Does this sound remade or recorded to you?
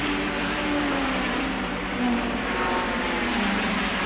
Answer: remade